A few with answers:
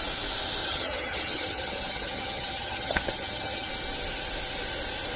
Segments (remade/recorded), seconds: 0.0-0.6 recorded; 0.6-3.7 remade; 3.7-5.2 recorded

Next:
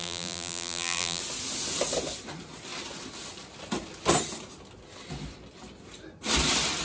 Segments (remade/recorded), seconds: 0.0-1.2 remade; 1.2-6.8 recorded

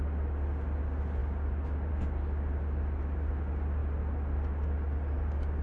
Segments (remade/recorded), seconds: 0.0-5.6 recorded

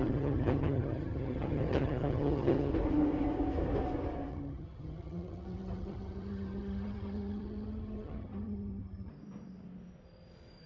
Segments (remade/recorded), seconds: 0.0-2.7 remade; 2.7-4.3 recorded; 4.3-9.1 remade; 9.1-10.7 recorded